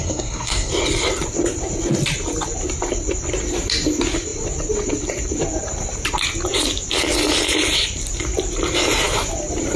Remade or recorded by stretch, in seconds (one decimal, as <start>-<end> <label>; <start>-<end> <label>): 0.0-0.7 remade; 0.7-9.8 recorded